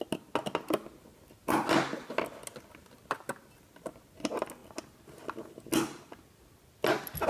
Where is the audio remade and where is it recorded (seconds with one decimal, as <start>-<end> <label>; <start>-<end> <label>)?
0.0-7.3 recorded

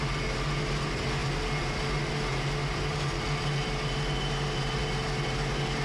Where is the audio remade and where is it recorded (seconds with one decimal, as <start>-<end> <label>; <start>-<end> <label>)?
0.0-5.8 recorded

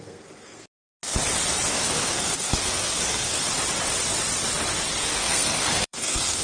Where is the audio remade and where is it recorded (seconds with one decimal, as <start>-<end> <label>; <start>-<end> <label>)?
0.0-0.9 remade; 0.9-1.7 recorded; 1.7-3.4 remade; 3.4-5.0 recorded; 5.0-6.4 remade

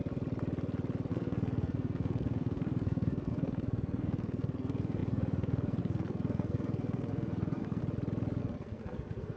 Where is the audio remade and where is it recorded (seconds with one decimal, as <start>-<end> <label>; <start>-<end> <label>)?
0.0-1.1 recorded; 1.1-7.8 remade; 7.8-8.4 recorded; 8.4-9.4 remade